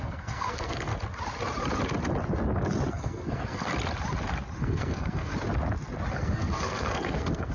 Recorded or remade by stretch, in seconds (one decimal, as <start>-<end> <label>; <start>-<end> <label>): 0.0-0.9 remade; 0.9-2.9 recorded; 2.9-3.7 remade; 3.7-4.6 recorded; 4.6-5.3 remade; 5.3-6.1 recorded; 6.1-7.5 remade